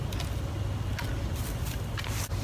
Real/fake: real